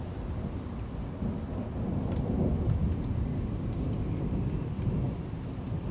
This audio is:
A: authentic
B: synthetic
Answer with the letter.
A